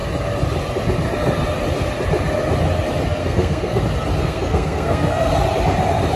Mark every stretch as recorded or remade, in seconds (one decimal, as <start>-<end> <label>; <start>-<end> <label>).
0.0-3.2 recorded; 3.2-3.8 remade; 3.8-4.2 recorded; 4.2-5.3 remade; 5.3-6.2 recorded